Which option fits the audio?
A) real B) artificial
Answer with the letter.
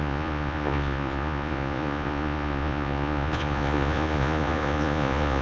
B